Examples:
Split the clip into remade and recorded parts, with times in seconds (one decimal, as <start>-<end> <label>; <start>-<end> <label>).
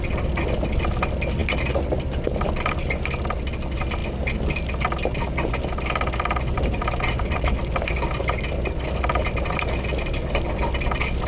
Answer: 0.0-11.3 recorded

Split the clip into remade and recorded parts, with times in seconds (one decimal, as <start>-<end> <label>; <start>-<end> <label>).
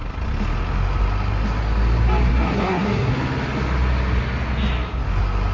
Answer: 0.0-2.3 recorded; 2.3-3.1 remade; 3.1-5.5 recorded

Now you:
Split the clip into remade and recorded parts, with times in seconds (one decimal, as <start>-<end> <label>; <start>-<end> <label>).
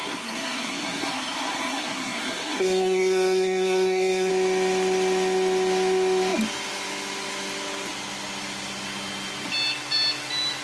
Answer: 0.0-4.3 remade; 4.3-10.6 recorded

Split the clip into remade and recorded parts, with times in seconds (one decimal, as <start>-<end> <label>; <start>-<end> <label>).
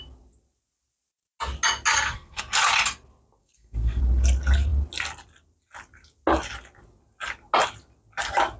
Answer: 0.0-1.9 recorded; 1.9-2.4 remade; 2.4-3.4 recorded; 3.4-4.0 remade; 4.0-8.6 recorded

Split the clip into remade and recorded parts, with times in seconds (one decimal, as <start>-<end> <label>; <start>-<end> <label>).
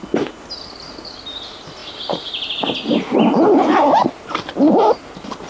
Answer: 0.0-5.5 recorded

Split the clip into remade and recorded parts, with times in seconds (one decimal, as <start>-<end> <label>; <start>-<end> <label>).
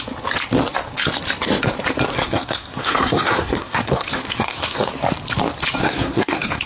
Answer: 0.0-2.1 recorded; 2.1-4.9 remade; 4.9-5.8 recorded; 5.8-6.7 remade